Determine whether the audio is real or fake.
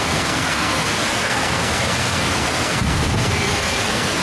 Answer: fake